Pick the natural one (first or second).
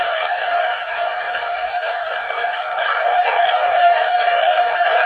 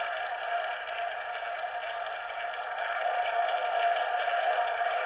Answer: second